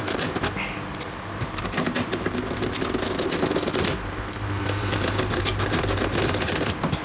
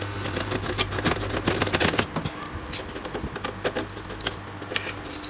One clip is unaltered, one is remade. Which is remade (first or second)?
first